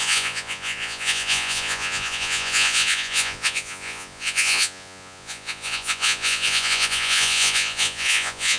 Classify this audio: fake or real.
fake